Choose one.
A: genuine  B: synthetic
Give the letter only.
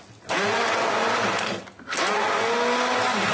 A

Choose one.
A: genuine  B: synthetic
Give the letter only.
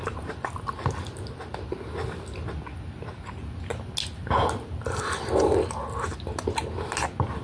A